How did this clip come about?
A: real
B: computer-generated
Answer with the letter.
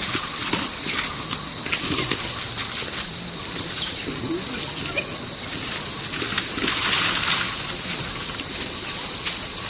A